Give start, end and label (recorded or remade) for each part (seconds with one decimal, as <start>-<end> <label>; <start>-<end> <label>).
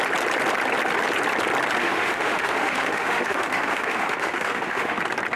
0.0-1.8 recorded; 1.8-5.0 remade; 5.0-5.4 recorded